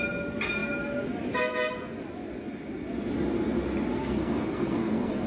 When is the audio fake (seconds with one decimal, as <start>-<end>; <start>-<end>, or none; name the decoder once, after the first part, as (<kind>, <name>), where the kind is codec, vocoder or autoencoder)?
3.9-5.3 (codec, SNAC)

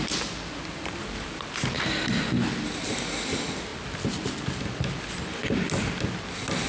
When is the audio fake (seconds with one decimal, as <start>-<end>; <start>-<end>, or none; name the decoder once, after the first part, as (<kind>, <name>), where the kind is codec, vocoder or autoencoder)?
none

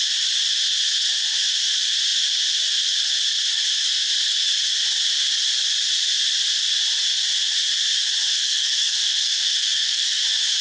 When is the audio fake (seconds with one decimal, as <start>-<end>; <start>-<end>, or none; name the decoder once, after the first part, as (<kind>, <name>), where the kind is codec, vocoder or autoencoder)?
8.2-10.2 (codec, SNAC)

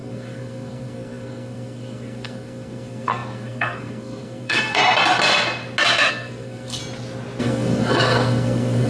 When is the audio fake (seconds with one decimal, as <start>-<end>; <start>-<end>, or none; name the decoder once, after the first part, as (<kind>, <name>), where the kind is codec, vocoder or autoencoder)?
0.0-4.8 (codec, SNAC); 6.1-6.8; 7.4-8.9

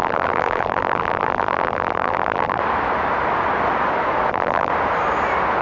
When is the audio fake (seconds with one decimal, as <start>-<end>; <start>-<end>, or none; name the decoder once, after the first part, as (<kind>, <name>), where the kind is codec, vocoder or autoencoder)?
0.0-2.6 (vocoder, BigVGAN v2); 4.3-4.7

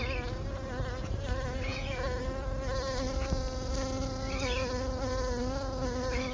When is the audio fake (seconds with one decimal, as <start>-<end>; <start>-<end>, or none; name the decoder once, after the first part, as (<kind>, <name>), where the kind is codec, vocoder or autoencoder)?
1.7-2.2 (vocoder, Vocos)

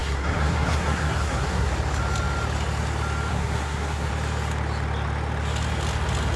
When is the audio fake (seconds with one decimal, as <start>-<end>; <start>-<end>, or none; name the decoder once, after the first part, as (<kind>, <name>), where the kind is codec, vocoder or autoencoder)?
0.0-1.7 (codec, SNAC); 3.3-4.1